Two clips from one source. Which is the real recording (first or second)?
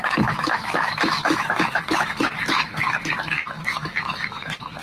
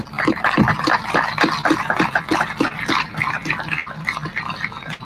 second